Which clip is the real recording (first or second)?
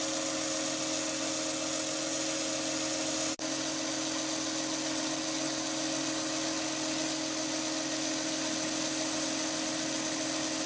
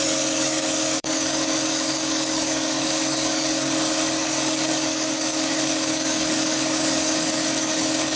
first